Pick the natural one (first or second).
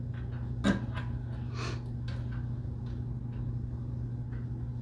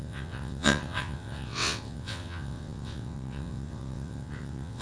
first